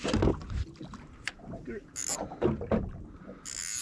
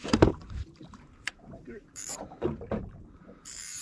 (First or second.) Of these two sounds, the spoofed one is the second